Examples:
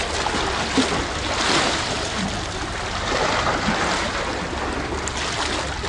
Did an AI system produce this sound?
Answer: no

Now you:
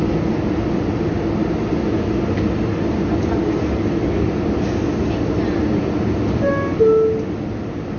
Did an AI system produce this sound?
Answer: no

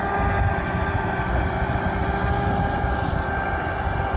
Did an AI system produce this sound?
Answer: no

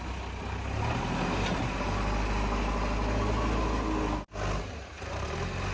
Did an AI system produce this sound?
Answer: no